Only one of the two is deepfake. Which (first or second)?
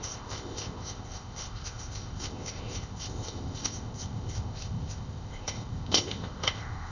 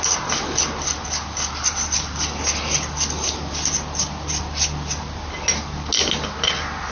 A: first